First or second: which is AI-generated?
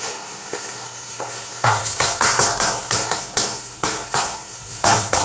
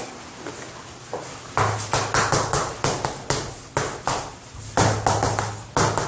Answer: first